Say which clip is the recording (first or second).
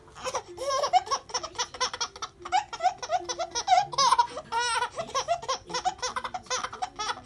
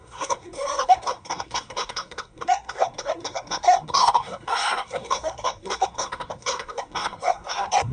first